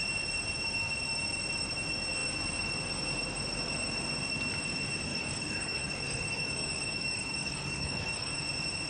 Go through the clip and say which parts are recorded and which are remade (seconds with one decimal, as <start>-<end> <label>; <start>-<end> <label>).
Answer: 0.0-5.1 recorded; 5.1-8.4 remade; 8.4-8.9 recorded